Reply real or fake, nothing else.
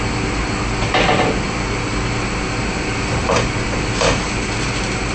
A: real